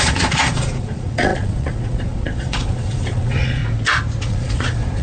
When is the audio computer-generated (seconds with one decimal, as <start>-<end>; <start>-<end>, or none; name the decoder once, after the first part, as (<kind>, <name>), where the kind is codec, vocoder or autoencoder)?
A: 0.0-3.6 (vocoder, Vocos); 4.2-5.0